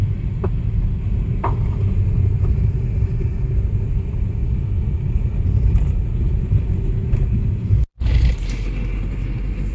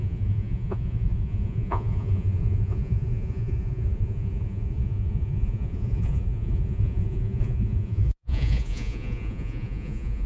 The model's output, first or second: second